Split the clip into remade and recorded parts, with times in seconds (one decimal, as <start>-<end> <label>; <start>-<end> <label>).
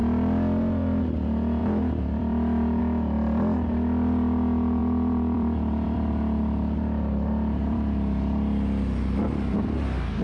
0.0-1.6 recorded; 1.6-2.8 remade; 2.8-4.8 recorded; 4.8-10.2 remade